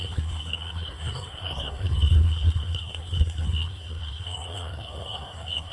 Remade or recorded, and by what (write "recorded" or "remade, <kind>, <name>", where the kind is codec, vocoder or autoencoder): remade, codec, SNAC